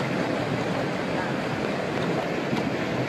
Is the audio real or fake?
real